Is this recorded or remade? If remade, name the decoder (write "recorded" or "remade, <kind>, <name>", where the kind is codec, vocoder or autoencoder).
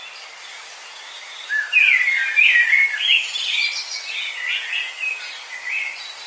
recorded